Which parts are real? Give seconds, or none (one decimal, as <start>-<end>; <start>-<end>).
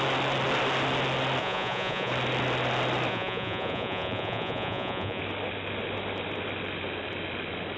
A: 0.0-1.4; 2.1-3.1; 5.2-7.8